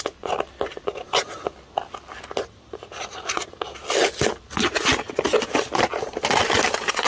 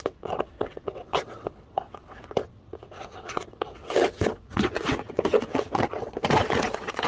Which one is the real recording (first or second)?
first